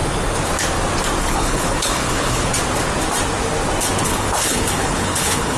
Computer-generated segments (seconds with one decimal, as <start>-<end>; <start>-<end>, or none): 1.2-2.5; 4.0-5.6